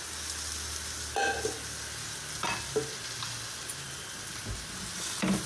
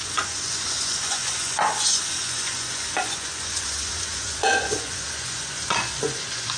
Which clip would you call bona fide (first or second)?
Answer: first